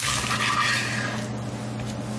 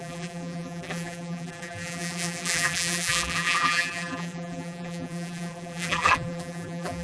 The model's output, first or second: second